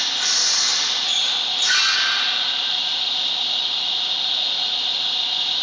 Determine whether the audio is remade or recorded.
recorded